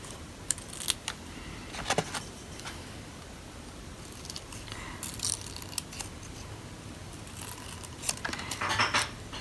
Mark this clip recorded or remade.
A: recorded